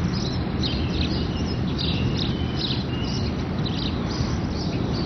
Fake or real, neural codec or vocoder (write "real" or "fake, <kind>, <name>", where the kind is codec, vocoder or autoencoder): real